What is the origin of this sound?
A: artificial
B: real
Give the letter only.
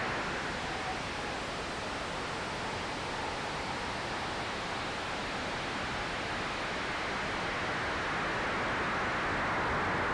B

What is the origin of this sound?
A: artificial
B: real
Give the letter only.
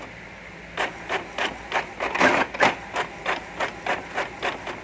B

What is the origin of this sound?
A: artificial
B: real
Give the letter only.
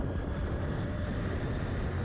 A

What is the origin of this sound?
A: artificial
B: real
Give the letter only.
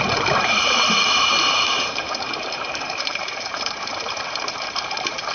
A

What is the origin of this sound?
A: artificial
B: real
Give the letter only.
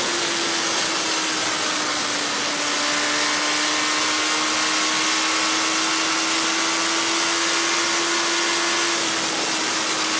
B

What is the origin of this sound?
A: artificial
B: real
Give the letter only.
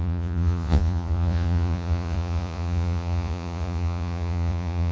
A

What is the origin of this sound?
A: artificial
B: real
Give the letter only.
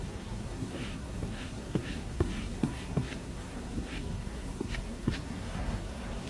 A